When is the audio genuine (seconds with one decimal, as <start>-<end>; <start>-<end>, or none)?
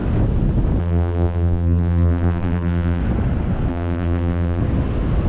0.0-0.8; 3.0-3.7; 4.6-5.3